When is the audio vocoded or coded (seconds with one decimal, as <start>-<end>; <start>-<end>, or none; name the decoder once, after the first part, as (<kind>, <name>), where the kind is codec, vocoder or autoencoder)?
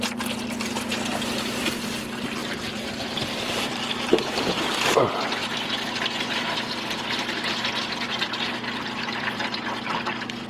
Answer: 2.4-4.8 (vocoder, BigVGAN v2)